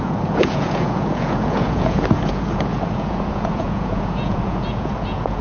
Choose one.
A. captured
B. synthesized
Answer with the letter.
B